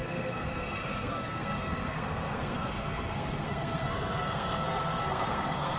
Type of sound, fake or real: fake